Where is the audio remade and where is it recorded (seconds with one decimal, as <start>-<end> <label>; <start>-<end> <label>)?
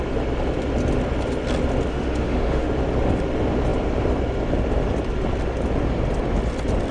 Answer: 0.0-1.9 recorded; 1.9-2.7 remade; 2.7-6.9 recorded